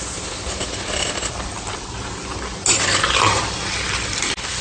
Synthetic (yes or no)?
no